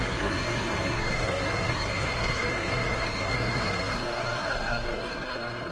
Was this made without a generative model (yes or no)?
no